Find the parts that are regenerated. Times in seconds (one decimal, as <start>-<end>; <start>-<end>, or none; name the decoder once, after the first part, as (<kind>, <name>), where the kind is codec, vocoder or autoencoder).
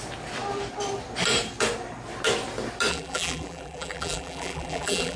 2.9-5.2 (vocoder, BigVGAN v2)